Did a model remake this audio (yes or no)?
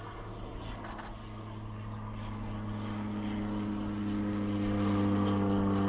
no